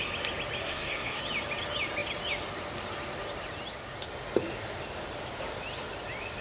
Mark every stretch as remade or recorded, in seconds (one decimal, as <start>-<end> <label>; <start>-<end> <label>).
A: 0.0-0.6 recorded; 0.6-1.2 remade; 1.2-6.4 recorded